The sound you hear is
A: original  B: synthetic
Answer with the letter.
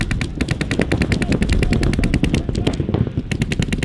A